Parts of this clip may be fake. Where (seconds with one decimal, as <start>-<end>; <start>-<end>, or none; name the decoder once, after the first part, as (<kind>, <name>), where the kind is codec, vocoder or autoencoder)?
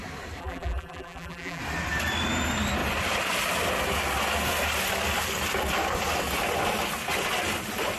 0.4-1.6 (vocoder, BigVGAN v2)